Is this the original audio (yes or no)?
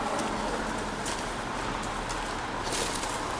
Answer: yes